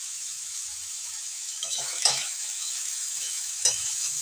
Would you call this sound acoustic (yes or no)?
no